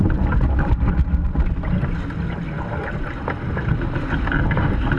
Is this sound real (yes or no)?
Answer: yes